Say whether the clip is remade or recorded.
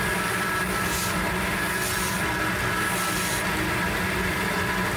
recorded